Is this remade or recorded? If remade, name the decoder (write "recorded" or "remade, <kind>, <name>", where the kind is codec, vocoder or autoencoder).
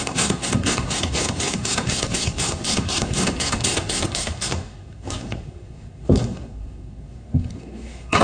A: remade, codec, SNAC